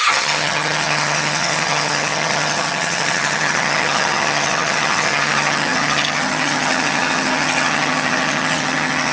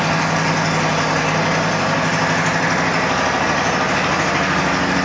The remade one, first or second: first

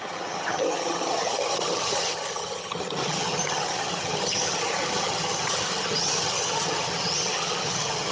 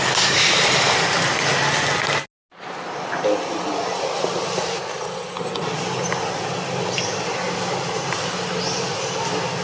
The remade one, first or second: first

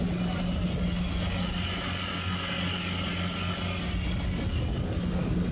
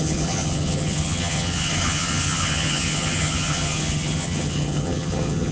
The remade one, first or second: second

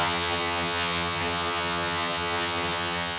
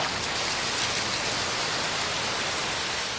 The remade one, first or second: first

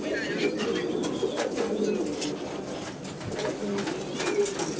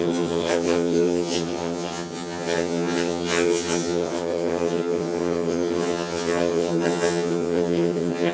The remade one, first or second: second